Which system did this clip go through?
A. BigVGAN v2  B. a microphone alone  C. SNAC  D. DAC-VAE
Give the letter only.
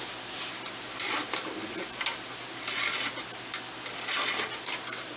B